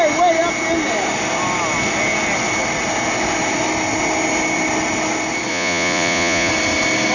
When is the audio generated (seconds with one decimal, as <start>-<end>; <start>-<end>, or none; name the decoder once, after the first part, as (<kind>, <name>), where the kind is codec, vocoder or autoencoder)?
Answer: 5.5-6.5 (vocoder, Vocos)